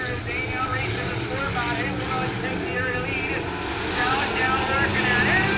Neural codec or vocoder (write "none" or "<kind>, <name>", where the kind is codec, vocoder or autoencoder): none